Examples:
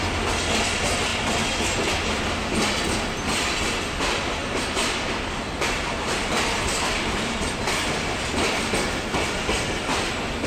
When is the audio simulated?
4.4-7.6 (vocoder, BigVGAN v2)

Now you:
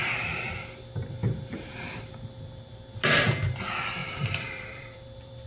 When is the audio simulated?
4.0-5.5 (vocoder, BigVGAN v2)

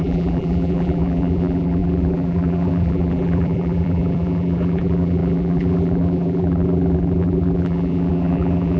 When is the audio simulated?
0.0-8.8 (vocoder, BigVGAN v2)

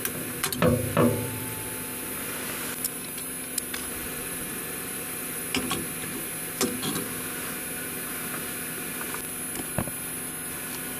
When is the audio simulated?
0.9-1.6 (vocoder, BigVGAN v2); 4.0-5.4